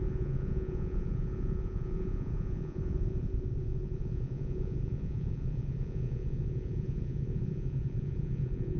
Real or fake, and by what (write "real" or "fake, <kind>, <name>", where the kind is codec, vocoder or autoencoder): fake, vocoder, Vocos